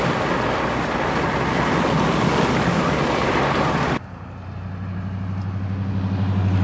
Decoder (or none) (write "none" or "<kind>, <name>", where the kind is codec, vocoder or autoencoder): none